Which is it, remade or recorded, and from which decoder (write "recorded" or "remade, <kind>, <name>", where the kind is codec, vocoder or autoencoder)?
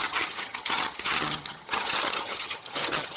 remade, vocoder, HiFi-GAN